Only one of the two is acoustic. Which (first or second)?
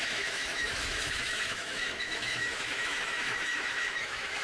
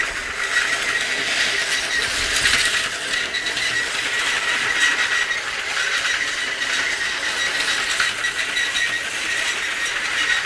second